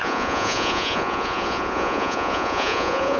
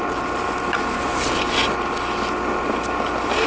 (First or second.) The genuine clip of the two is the second